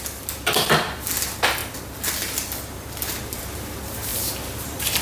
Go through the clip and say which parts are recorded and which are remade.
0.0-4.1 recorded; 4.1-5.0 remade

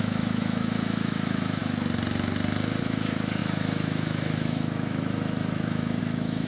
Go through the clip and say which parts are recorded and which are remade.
0.0-1.6 remade; 1.6-2.8 recorded; 2.8-6.5 remade

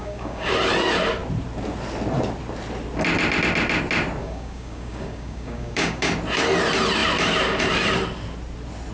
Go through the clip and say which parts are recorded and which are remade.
0.0-0.5 remade; 0.5-4.2 recorded; 4.2-6.1 remade; 6.1-8.9 recorded

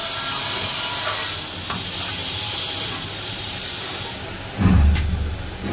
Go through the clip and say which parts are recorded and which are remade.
0.0-2.2 recorded; 2.2-3.8 remade; 3.8-5.7 recorded